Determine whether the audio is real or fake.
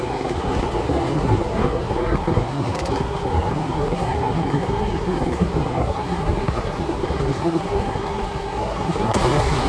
fake